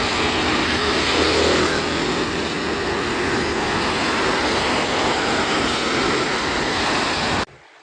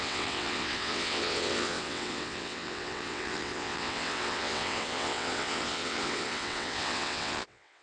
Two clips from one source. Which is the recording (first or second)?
first